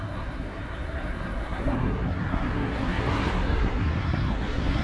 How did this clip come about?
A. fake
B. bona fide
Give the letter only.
A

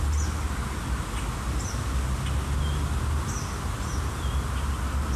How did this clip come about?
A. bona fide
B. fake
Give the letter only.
A